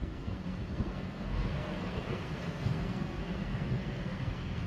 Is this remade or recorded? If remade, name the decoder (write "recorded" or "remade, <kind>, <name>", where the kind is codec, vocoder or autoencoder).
remade, codec, SNAC